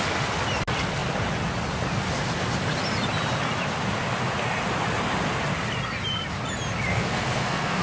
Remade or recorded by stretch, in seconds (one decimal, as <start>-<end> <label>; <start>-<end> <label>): 0.0-6.9 recorded; 6.9-7.8 remade